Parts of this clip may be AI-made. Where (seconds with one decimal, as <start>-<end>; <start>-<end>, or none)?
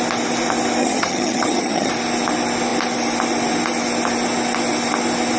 0.8-1.9